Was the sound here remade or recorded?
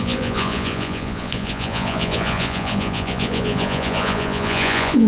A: remade